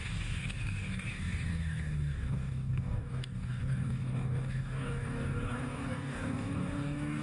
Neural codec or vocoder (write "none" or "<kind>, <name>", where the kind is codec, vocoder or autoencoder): codec, DAC